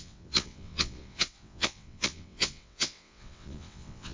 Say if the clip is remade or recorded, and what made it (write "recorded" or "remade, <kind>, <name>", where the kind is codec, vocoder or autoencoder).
remade, vocoder, WaveNeXt